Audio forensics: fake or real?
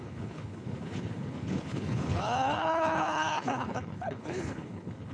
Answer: fake